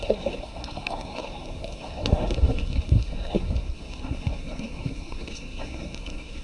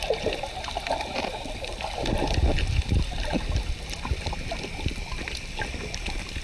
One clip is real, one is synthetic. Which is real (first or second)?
second